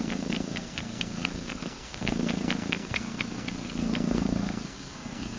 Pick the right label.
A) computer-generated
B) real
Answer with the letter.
A